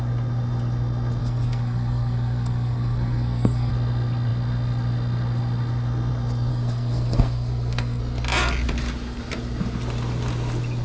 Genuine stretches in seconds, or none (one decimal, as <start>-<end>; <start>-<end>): 0.0-1.2; 3.7-6.5; 8.0-10.8